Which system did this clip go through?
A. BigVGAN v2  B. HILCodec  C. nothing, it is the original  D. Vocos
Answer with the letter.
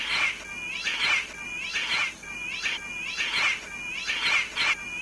C